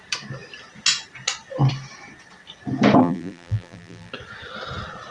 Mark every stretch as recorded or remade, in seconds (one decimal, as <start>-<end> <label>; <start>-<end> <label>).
0.0-3.0 recorded; 3.0-4.1 remade; 4.1-5.1 recorded